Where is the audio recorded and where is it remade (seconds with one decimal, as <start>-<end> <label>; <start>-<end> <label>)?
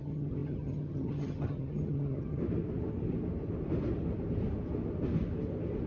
0.0-2.4 remade; 2.4-5.9 recorded